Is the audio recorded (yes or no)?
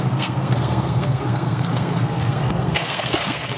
no